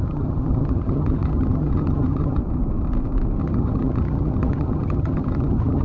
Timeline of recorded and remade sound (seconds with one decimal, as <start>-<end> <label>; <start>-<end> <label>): 0.0-2.4 remade; 2.4-3.4 recorded; 3.4-5.8 remade